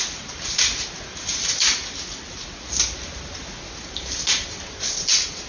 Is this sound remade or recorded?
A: recorded